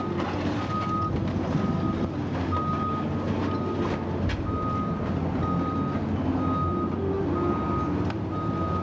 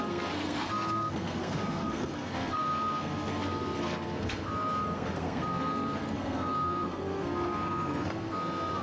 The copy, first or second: second